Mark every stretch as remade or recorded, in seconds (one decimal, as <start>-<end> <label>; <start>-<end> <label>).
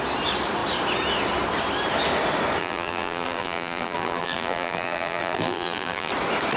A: 0.0-2.6 recorded; 2.6-6.1 remade; 6.1-6.6 recorded